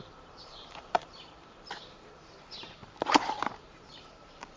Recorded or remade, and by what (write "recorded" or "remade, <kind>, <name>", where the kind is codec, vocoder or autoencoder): remade, vocoder, BigVGAN v2